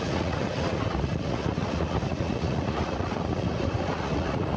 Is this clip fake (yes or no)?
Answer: yes